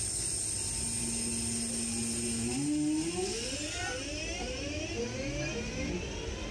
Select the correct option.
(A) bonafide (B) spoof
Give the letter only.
A